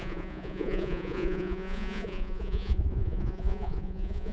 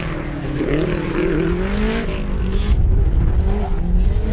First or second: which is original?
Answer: second